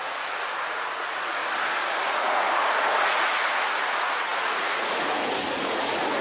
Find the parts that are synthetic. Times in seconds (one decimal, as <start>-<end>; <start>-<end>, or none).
0.0-1.4; 2.1-6.2